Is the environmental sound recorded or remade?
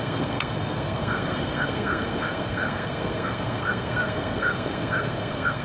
remade